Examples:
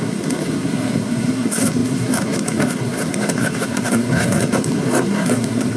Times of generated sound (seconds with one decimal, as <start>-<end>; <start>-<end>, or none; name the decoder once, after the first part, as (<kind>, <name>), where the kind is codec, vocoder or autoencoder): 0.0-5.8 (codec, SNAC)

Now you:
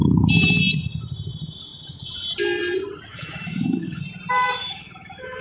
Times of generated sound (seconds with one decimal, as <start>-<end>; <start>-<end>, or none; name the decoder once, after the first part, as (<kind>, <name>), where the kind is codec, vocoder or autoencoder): 0.0-0.6 (autoencoder, DAC-VAE); 3.1-4.0; 4.6-5.4

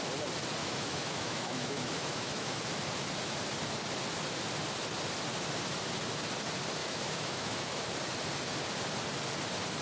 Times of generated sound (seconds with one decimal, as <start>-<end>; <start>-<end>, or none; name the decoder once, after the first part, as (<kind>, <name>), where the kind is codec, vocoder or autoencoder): 0.6-2.6 (autoencoder, DAC-VAE); 6.8-7.8